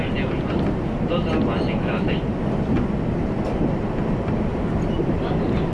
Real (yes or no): yes